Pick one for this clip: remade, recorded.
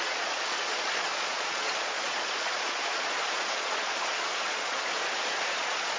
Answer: remade